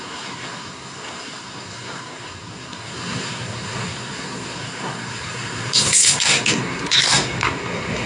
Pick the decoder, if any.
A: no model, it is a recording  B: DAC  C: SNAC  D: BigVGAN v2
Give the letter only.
C